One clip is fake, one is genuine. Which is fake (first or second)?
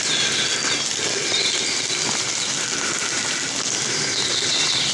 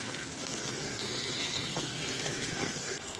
second